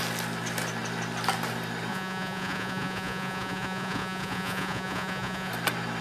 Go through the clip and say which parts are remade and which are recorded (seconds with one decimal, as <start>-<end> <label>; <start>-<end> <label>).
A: 0.0-1.9 recorded; 1.9-5.5 remade; 5.5-6.0 recorded